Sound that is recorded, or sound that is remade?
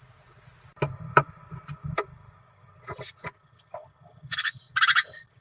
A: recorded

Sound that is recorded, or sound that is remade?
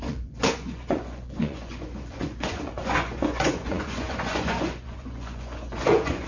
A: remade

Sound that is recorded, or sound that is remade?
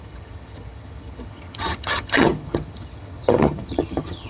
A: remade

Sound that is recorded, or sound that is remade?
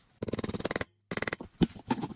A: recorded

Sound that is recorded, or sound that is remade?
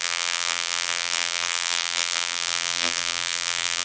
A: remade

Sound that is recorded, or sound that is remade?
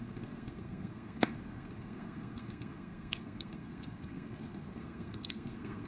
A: remade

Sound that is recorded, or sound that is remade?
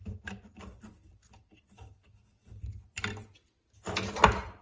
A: recorded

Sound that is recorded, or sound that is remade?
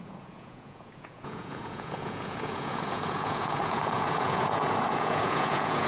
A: remade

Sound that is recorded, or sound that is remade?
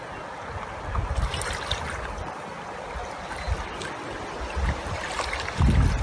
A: recorded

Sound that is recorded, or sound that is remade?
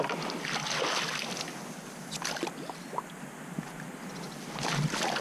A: recorded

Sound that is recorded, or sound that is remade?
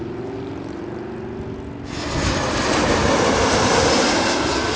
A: recorded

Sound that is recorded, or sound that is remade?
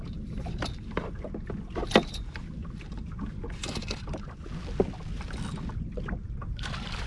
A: recorded